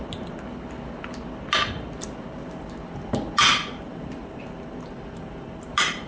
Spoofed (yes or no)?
no